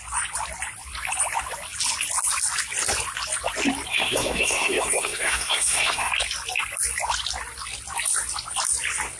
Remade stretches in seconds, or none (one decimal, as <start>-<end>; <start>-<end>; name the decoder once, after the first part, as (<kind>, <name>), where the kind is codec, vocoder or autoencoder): 3.9-6.1 (codec, SNAC)